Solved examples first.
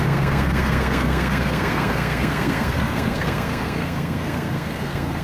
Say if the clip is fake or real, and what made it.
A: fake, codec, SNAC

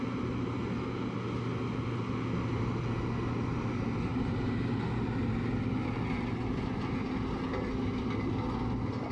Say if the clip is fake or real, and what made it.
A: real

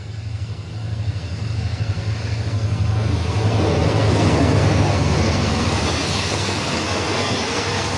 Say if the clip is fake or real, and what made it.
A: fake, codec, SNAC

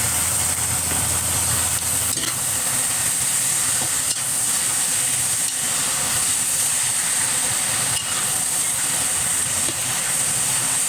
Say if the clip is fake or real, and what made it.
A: real